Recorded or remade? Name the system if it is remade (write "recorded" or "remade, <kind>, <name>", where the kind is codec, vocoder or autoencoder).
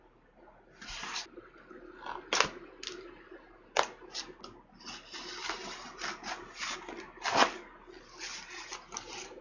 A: recorded